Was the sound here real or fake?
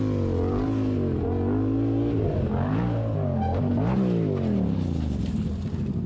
real